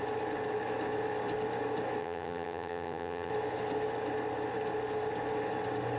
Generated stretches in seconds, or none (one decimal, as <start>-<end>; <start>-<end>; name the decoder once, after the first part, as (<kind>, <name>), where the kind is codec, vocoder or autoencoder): 2.0-3.3 (vocoder, HiFi-GAN)